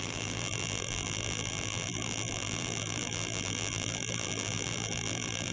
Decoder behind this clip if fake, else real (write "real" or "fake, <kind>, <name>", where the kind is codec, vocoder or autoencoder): fake, vocoder, BigVGAN v2